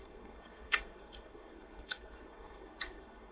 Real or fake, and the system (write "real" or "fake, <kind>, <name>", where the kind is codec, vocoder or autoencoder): fake, codec, SNAC